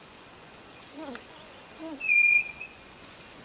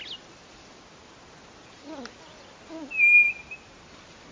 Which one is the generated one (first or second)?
first